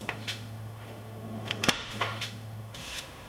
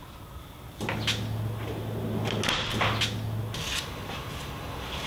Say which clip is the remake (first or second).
first